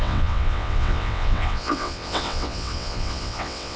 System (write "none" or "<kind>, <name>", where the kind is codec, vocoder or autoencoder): vocoder, WaveNeXt